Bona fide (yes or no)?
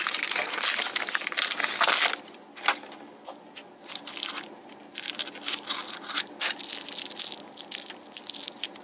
yes